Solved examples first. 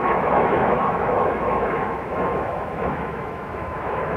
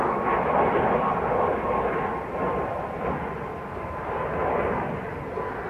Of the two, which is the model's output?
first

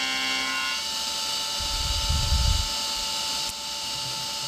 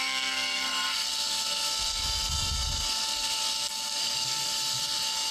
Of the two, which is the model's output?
second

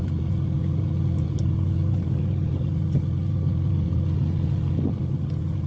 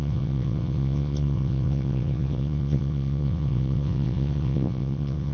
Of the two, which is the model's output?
second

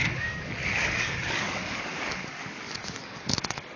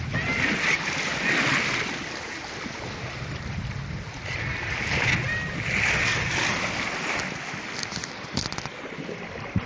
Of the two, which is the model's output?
first